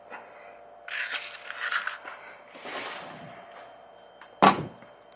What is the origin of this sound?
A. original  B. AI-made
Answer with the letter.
A